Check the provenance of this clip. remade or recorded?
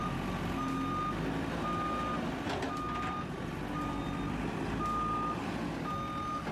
recorded